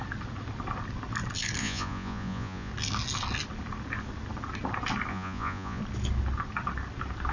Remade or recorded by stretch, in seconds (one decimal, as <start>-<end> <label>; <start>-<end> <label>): 0.0-1.6 recorded; 1.6-2.7 remade; 2.7-5.1 recorded; 5.1-5.8 remade; 5.8-7.3 recorded